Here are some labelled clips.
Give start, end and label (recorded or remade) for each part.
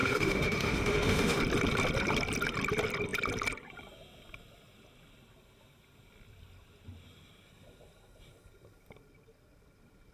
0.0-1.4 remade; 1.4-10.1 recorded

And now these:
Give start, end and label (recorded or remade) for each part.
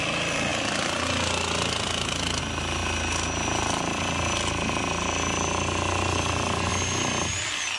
0.0-7.8 recorded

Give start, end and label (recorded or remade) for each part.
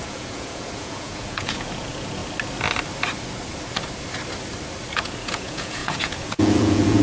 0.0-2.2 remade; 2.2-4.9 recorded; 4.9-7.0 remade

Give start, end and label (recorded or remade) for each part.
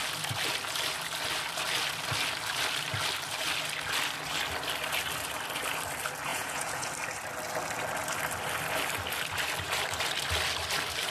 0.0-6.3 recorded; 6.3-6.9 remade; 6.9-11.1 recorded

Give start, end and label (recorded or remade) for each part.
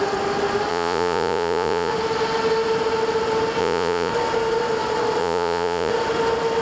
0.0-0.7 recorded; 0.7-1.9 remade; 1.9-3.6 recorded; 3.6-4.1 remade; 4.1-5.2 recorded; 5.2-5.9 remade; 5.9-6.6 recorded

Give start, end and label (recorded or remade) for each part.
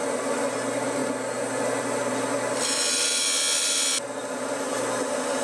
0.0-5.4 recorded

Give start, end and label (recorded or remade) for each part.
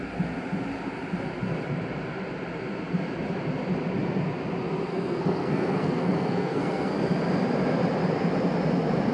0.0-4.9 recorded; 4.9-6.9 remade; 6.9-9.1 recorded